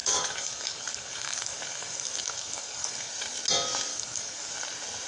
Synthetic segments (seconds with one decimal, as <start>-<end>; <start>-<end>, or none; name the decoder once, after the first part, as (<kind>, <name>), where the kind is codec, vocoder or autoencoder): 0.0-3.1 (codec, DAC); 3.9-4.5